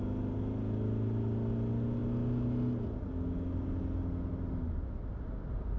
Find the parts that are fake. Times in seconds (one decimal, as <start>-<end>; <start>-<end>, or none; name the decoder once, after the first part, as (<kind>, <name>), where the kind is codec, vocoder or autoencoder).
none

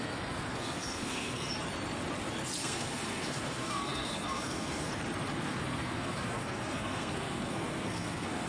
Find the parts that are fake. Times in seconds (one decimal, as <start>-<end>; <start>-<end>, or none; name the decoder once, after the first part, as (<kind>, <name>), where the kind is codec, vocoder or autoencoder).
0.0-1.5 (codec, SNAC); 2.6-4.9; 5.4-8.5

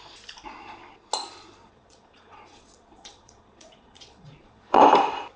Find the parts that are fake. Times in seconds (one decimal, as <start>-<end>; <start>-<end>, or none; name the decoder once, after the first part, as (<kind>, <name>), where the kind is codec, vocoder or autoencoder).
1.6-4.8 (vocoder, Vocos)

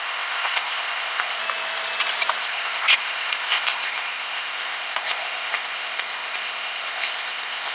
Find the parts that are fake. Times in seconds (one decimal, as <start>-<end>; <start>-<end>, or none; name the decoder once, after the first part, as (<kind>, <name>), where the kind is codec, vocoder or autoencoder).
0.0-1.4 (codec, ZipCodec); 2.4-7.7

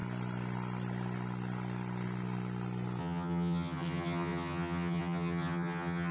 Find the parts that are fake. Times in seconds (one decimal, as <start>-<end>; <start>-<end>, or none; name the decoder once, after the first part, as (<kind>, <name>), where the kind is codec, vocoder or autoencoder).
3.0-6.1 (vocoder, HiFi-GAN)